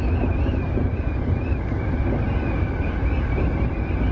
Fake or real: real